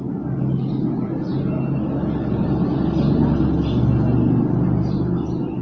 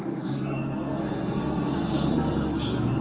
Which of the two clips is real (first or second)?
first